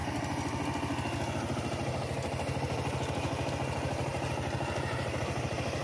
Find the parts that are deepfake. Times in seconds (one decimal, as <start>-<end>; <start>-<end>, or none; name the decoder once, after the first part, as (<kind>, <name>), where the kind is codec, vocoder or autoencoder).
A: none